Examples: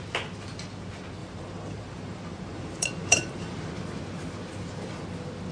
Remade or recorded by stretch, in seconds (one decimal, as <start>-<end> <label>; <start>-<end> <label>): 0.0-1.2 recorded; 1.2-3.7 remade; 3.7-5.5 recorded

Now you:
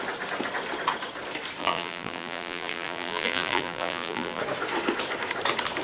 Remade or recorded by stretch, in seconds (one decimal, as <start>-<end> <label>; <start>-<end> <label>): 0.0-1.6 recorded; 1.6-4.4 remade; 4.4-5.8 recorded

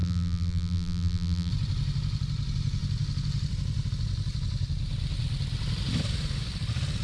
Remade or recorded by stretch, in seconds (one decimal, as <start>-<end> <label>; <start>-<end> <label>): 0.0-1.5 remade; 1.5-7.0 recorded

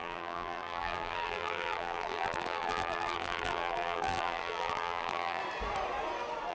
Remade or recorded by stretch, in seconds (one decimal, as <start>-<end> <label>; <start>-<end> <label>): 0.0-5.4 remade; 5.4-6.5 recorded

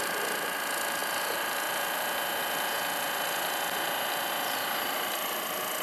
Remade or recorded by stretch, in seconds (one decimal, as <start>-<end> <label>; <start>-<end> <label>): 0.0-5.8 recorded

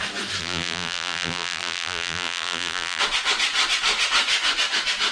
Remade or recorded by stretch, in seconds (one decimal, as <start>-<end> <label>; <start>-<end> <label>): 0.0-0.4 recorded; 0.4-3.0 remade; 3.0-5.1 recorded

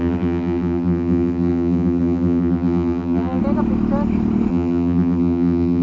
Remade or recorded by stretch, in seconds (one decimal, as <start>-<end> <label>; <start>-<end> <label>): 0.0-3.4 remade; 3.4-4.5 recorded; 4.5-5.8 remade

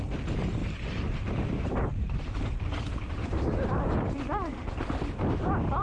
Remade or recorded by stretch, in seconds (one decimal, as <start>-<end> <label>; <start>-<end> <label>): 0.0-0.6 recorded; 0.6-4.1 remade; 4.1-4.5 recorded; 4.5-5.0 remade; 5.0-5.8 recorded